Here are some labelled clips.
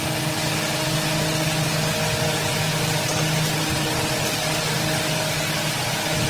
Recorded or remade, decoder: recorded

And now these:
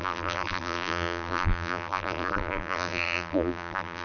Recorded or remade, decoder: remade, vocoder, BigVGAN v2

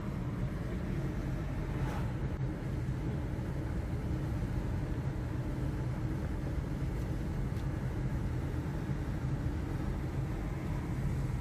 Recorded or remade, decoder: recorded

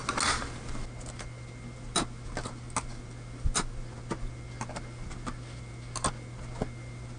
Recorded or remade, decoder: recorded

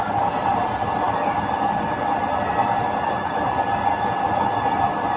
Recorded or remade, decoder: recorded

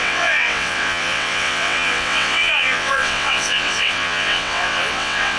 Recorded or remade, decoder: remade, vocoder, WaveNeXt